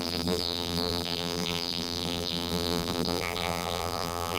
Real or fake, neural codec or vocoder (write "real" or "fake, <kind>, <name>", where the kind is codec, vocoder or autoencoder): fake, vocoder, BigVGAN v2